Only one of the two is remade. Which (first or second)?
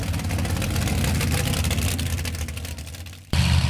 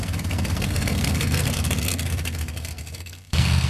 second